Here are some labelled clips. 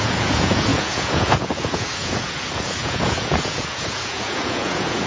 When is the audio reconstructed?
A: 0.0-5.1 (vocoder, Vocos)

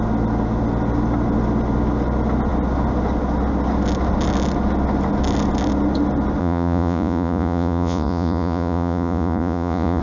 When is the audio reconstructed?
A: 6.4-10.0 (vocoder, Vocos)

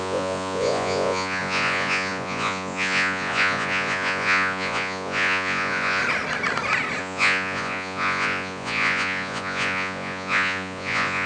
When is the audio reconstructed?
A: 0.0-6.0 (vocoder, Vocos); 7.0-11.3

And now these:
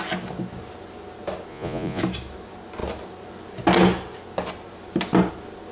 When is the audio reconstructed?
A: 1.5-2.0 (vocoder, Vocos)